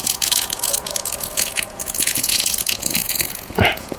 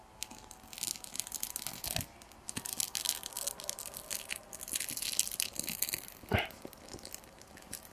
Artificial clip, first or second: first